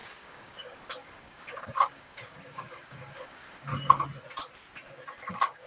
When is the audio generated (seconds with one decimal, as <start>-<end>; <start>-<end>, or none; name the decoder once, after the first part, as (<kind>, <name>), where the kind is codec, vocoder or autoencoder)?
0.0-3.7 (codec, DAC); 5.3-5.7